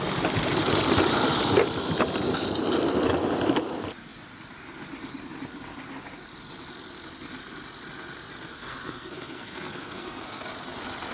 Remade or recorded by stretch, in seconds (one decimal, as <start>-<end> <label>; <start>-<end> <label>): 0.0-8.5 recorded; 8.5-10.4 remade; 10.4-11.1 recorded